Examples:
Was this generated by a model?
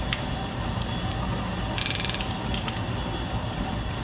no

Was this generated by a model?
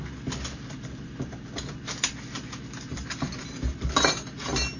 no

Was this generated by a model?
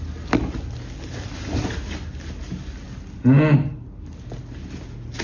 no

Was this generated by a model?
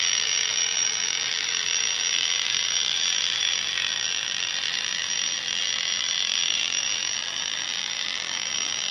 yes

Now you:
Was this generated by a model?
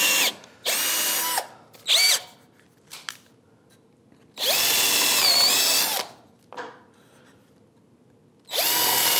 no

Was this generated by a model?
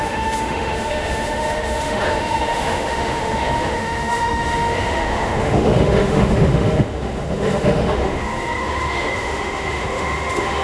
yes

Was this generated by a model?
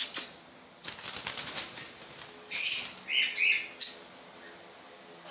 no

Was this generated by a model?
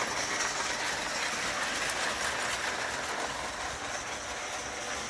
no